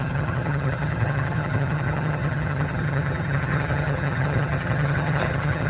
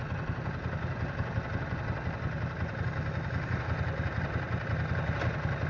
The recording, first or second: second